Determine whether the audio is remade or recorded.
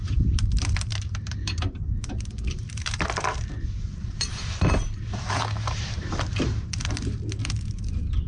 remade